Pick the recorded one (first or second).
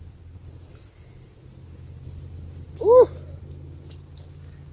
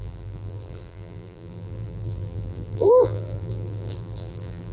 first